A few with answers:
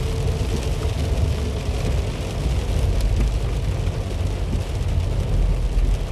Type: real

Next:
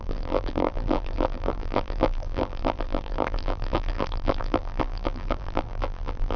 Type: fake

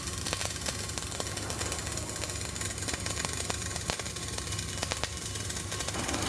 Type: real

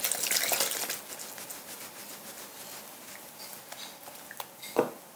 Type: real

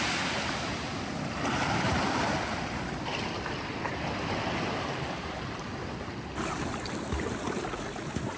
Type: fake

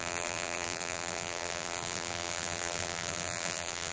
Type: fake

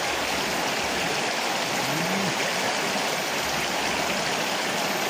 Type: real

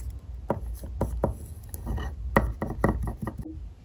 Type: real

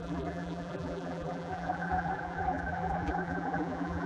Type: fake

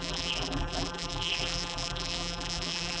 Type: fake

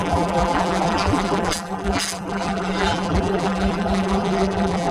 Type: fake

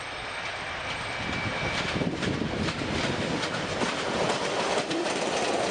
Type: fake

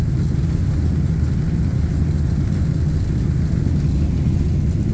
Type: real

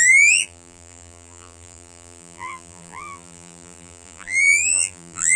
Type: fake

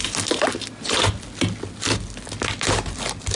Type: real